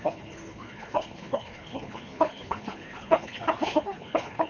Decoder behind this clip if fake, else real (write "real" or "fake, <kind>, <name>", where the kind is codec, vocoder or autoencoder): fake, codec, HILCodec